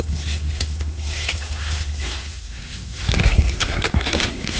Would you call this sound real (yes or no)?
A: no